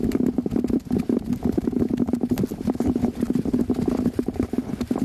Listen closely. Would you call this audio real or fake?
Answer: real